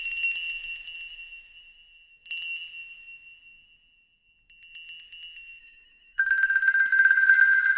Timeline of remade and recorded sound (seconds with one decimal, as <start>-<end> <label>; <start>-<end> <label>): 0.0-5.6 recorded; 5.6-6.3 remade; 6.3-7.8 recorded